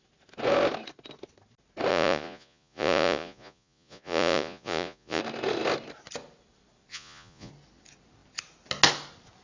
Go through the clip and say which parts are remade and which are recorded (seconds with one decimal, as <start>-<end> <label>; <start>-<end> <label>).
0.0-1.9 recorded; 1.9-5.2 remade; 5.2-6.9 recorded; 6.9-7.5 remade; 7.5-9.4 recorded